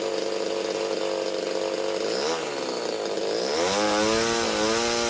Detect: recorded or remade recorded